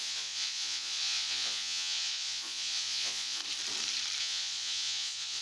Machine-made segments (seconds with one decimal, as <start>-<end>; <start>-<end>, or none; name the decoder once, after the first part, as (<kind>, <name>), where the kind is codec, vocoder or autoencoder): 0.0-3.4 (vocoder, Vocos); 4.2-5.4